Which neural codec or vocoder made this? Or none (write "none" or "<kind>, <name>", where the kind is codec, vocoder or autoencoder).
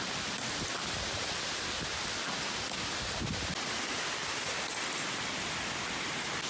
none